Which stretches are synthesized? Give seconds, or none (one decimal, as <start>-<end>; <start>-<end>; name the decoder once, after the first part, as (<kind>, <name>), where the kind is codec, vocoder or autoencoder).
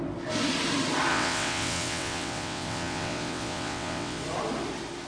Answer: 1.1-4.2 (vocoder, WaveNeXt)